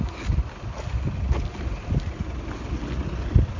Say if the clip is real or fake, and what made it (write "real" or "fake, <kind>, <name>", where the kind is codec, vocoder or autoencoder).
real